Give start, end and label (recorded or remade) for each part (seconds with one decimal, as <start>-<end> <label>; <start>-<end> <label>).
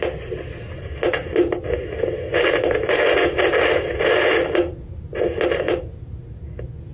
0.0-6.9 recorded